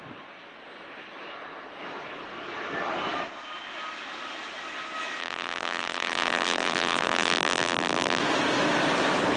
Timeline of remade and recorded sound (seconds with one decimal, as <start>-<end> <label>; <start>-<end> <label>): 0.0-5.2 recorded; 5.2-8.2 remade; 8.2-9.4 recorded

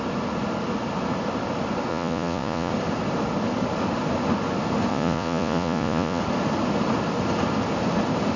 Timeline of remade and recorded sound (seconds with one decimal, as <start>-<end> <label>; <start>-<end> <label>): 0.0-1.9 recorded; 1.9-2.7 remade; 2.7-4.9 recorded; 4.9-6.2 remade; 6.2-8.4 recorded

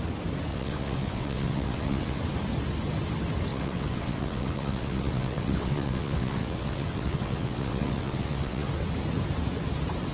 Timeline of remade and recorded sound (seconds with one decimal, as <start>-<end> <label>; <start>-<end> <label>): 0.0-0.5 recorded; 0.5-2.2 remade; 2.2-3.5 recorded; 3.5-8.7 remade; 8.7-10.1 recorded

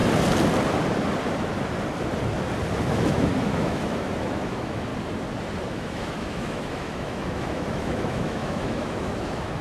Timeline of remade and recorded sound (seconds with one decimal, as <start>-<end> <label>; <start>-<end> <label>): 0.0-2.9 recorded; 2.9-4.9 remade; 4.9-5.7 recorded; 5.7-9.6 remade

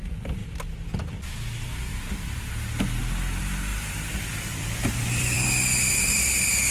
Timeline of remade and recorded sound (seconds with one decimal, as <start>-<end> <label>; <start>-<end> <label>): 0.0-1.9 recorded; 1.9-2.5 remade; 2.5-3.7 recorded; 3.7-5.5 remade; 5.5-6.7 recorded

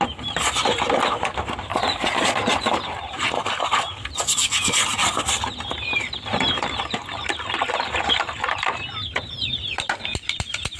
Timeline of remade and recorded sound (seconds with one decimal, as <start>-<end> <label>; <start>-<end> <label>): 0.0-1.7 recorded; 1.7-2.7 remade; 2.7-10.8 recorded